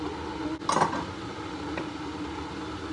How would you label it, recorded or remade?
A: recorded